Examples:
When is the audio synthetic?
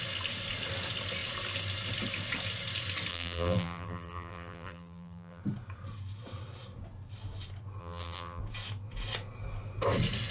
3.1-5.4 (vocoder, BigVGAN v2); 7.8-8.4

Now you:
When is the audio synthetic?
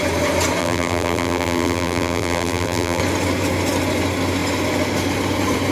0.6-3.0 (vocoder, BigVGAN v2)